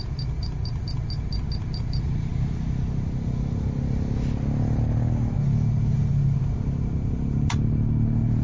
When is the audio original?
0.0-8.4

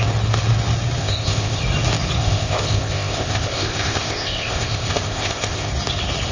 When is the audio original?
0.0-1.0; 1.6-2.2; 5.7-6.3

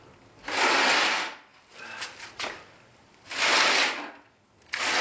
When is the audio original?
0.0-5.0

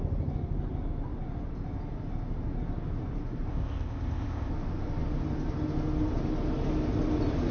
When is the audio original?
0.0-3.5; 4.5-7.5

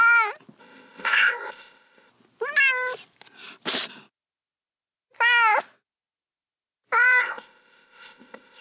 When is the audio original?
0.0-0.6; 2.1-7.2

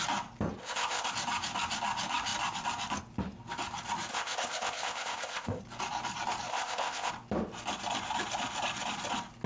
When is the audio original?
0.0-0.6; 1.1-4.1; 5.6-6.5; 7.1-9.5